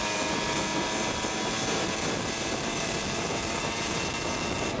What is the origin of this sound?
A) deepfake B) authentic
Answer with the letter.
B